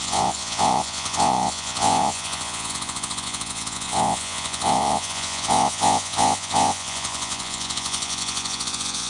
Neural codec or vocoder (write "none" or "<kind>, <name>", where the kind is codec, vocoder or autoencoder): vocoder, Vocos